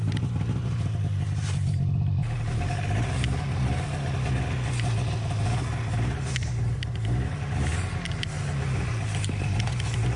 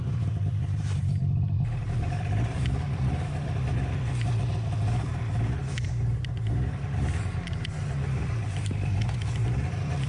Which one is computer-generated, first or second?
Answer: second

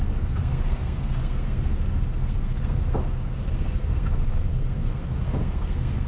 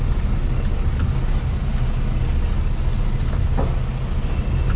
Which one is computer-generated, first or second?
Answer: first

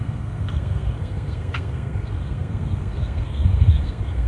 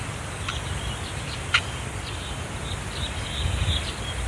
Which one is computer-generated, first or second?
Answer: first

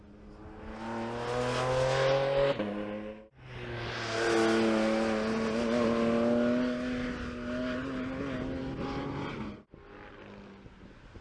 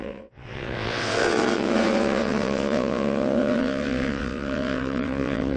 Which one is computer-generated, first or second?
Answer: second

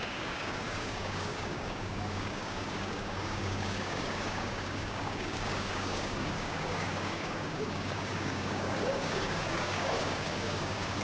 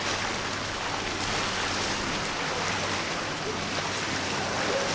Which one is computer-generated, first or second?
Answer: first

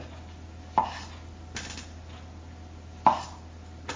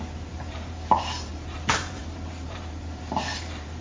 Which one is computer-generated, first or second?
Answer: second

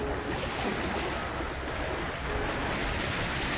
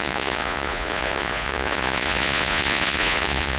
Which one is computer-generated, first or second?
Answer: second